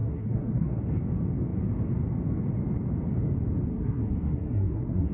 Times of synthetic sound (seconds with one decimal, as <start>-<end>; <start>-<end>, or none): 0.0-0.8; 3.7-5.1